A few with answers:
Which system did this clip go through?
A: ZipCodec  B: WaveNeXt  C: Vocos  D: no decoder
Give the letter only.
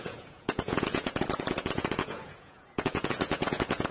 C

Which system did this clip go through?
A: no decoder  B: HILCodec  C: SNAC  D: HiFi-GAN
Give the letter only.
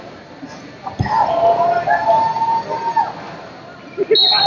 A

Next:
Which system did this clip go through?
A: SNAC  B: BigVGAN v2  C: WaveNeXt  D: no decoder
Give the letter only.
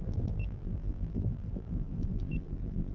B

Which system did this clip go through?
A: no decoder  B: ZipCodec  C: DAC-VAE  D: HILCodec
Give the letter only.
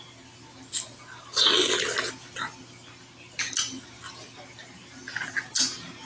A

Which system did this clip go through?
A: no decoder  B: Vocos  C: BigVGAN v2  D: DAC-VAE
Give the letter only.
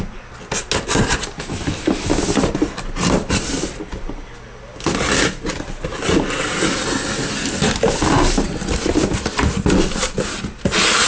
A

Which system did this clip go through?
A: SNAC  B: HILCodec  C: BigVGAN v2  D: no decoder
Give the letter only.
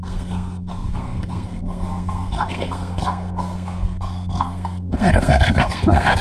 A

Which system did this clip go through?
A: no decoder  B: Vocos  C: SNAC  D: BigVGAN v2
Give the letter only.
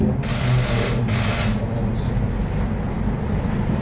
A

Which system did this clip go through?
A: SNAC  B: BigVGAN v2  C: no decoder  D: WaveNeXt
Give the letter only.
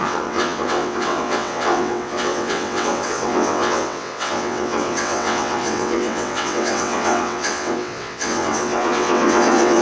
D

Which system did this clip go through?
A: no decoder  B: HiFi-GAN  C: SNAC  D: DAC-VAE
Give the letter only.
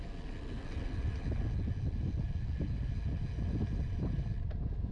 A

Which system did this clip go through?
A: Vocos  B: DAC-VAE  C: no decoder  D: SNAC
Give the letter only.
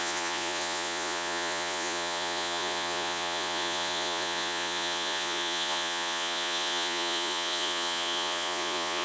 A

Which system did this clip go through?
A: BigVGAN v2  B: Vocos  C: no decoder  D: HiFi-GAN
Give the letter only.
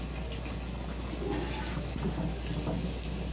C